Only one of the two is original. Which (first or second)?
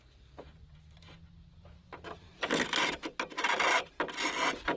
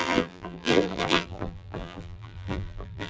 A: first